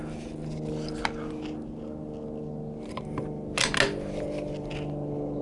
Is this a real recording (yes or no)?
yes